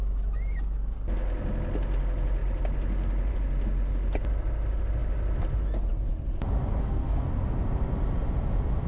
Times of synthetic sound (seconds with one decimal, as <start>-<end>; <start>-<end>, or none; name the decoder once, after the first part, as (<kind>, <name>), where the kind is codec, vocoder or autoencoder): 6.7-7.2 (codec, SNAC)